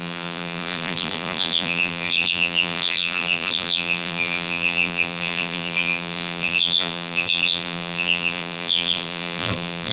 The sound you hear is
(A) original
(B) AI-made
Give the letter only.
B